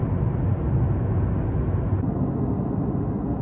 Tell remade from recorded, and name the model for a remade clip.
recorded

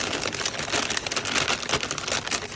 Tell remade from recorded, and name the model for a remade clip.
recorded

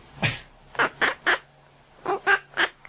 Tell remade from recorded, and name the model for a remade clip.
recorded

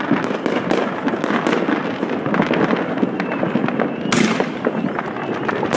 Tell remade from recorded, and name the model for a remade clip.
recorded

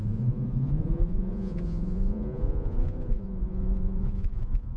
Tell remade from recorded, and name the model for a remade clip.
remade, vocoder, Vocos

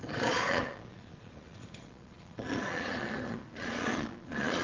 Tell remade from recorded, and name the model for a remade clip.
remade, vocoder, Vocos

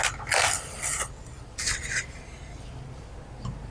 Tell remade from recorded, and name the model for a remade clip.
recorded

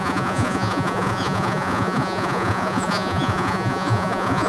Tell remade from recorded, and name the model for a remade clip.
remade, vocoder, Vocos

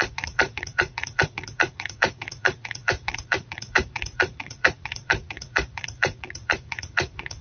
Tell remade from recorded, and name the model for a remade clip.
remade, vocoder, Vocos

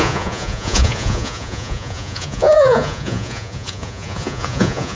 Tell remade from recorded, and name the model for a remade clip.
remade, vocoder, Vocos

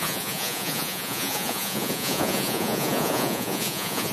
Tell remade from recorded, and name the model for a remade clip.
remade, vocoder, Vocos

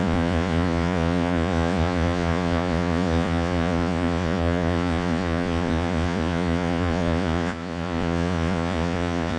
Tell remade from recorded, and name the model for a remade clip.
remade, vocoder, Vocos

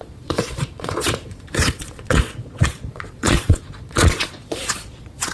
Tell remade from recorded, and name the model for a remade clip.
remade, vocoder, Vocos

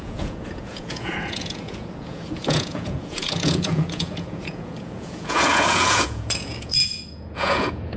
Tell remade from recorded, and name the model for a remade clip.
remade, vocoder, Vocos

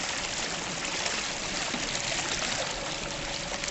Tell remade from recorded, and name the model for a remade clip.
recorded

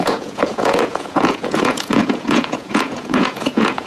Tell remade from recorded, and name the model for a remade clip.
remade, vocoder, Vocos